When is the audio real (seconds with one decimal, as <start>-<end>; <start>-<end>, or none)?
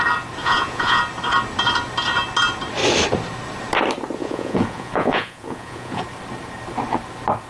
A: 0.0-0.4; 1.0-4.2; 6.0-7.5